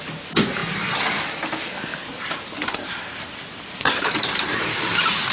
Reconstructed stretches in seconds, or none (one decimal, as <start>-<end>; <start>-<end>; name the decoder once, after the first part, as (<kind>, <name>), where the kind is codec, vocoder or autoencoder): 1.9-5.3 (vocoder, BigVGAN v2)